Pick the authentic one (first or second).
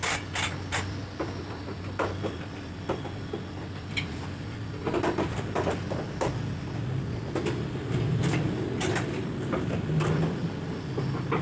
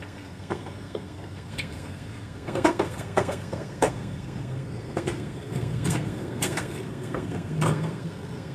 first